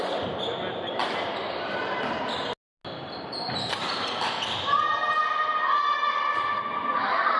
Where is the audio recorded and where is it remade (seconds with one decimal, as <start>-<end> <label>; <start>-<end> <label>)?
0.0-7.4 recorded